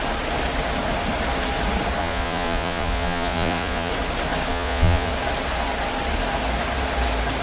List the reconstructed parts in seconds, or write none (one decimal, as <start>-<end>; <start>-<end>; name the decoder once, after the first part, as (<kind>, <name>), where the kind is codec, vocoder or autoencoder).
2.0-3.9 (vocoder, Vocos); 4.5-5.1